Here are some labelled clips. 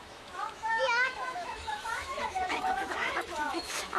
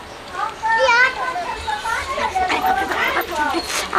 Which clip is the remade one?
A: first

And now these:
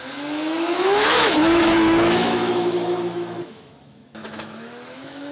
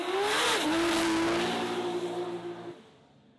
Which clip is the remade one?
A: first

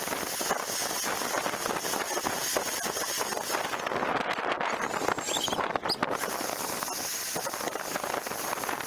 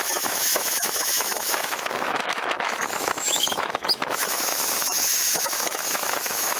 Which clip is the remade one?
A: second